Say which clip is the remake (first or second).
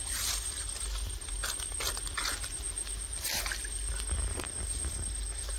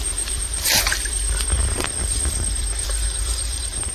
second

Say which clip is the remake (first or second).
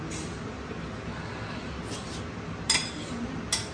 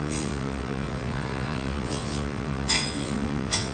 second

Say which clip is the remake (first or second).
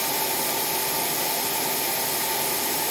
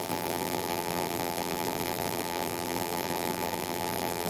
second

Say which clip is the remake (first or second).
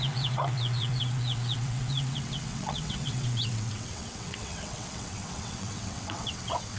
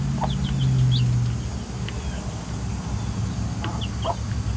first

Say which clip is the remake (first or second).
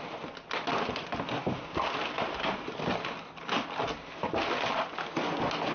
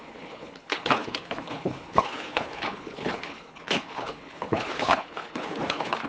second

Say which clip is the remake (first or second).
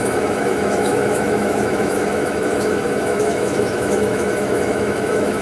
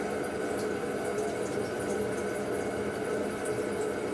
first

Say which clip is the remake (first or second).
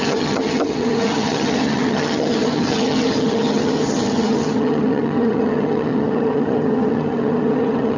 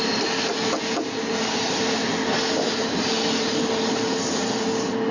first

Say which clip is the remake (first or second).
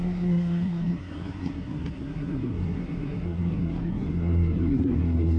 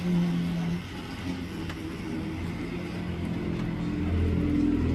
first